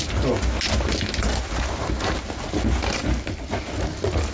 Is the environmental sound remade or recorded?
recorded